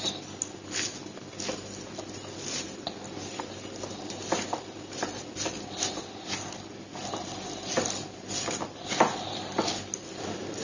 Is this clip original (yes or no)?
yes